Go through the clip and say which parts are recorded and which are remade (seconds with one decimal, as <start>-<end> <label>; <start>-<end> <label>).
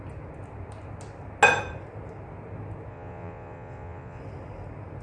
0.0-2.9 recorded; 2.9-4.2 remade; 4.2-5.0 recorded